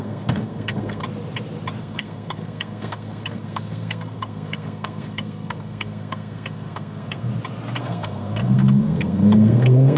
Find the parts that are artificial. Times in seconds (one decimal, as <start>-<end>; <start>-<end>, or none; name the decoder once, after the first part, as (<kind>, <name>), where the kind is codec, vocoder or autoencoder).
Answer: 0.0-1.0 (codec, SNAC); 1.8-7.3; 7.8-10.0